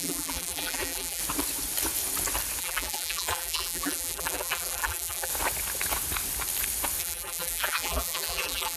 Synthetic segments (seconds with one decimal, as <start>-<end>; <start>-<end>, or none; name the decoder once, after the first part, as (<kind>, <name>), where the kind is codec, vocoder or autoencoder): 0.0-1.2 (vocoder, BigVGAN v2); 2.6-5.3; 7.0-8.8

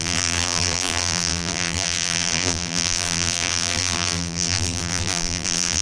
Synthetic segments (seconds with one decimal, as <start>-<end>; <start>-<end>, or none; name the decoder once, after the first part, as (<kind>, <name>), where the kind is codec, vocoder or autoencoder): 0.0-5.8 (vocoder, BigVGAN v2)

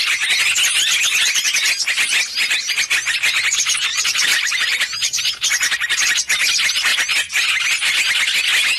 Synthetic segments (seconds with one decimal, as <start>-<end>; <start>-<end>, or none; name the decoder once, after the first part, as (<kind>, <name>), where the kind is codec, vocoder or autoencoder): 3.9-5.2 (vocoder, BigVGAN v2)